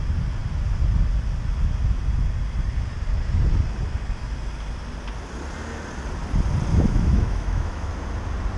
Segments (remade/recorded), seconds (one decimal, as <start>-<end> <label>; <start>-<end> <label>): 0.0-6.7 recorded; 6.7-7.9 remade; 7.9-8.6 recorded